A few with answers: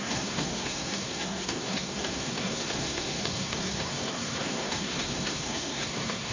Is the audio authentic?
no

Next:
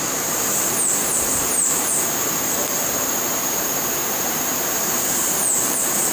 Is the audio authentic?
no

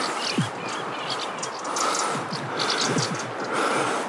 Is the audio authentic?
yes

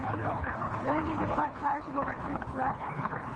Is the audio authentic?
no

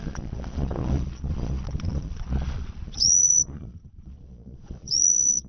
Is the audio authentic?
no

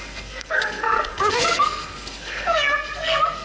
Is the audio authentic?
no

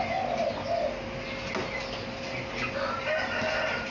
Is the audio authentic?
yes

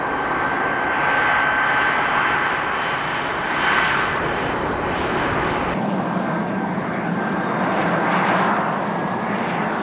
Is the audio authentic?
yes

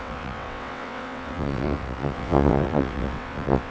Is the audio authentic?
no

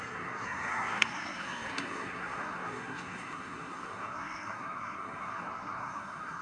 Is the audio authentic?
no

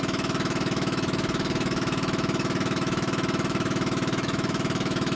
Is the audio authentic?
no